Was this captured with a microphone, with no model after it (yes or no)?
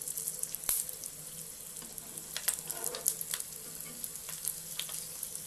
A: yes